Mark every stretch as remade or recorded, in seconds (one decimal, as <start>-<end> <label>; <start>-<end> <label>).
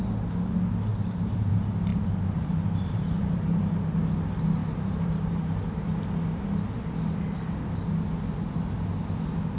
0.0-0.9 recorded; 0.9-1.5 remade; 1.5-1.9 recorded; 1.9-4.0 remade; 4.0-4.6 recorded; 4.6-5.4 remade; 5.4-9.6 recorded